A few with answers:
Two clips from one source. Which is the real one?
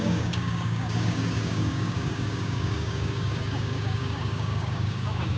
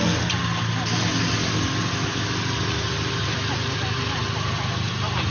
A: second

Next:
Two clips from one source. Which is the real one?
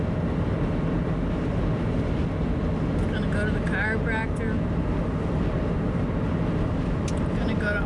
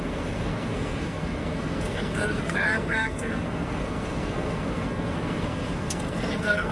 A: first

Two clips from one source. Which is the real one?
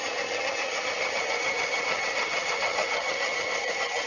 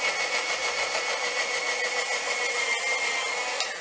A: second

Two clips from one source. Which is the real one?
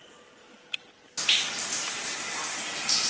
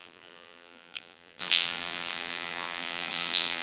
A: first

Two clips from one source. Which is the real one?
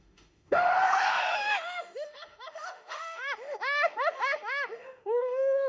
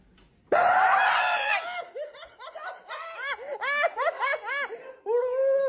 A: second